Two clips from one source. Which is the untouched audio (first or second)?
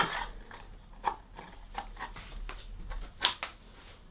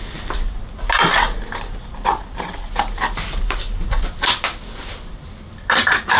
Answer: first